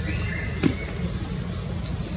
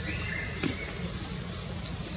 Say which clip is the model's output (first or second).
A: second